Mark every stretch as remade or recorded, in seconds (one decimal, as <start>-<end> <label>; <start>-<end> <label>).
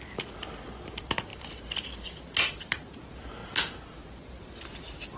0.0-5.2 recorded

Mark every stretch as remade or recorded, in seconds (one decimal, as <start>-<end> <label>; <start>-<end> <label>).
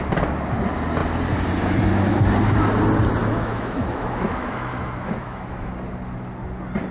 0.0-3.2 recorded; 3.2-5.7 remade; 5.7-6.9 recorded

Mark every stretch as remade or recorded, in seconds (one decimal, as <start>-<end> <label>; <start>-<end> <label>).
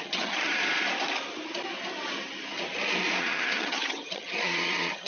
0.0-0.6 remade; 0.6-3.2 recorded; 3.2-5.1 remade